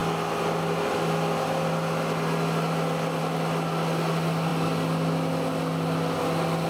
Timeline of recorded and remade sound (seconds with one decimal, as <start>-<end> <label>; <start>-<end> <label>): 0.0-6.7 recorded